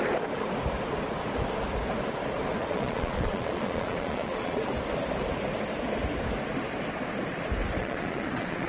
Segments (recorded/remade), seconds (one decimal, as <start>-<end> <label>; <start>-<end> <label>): 0.0-2.6 recorded; 2.6-4.7 remade; 4.7-7.8 recorded; 7.8-8.7 remade